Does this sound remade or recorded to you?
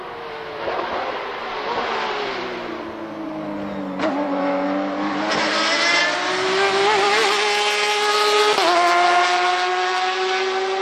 recorded